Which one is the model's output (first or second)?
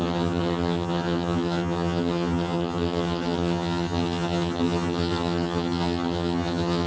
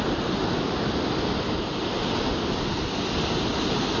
first